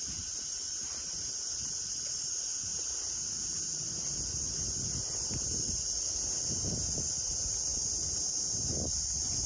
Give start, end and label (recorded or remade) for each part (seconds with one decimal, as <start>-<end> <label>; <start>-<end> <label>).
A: 0.0-9.5 recorded